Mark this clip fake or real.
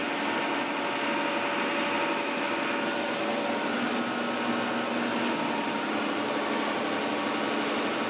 real